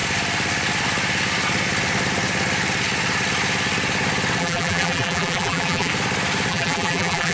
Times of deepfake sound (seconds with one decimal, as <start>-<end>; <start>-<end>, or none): 4.4-5.9; 6.5-7.3